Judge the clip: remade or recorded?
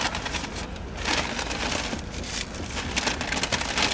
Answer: recorded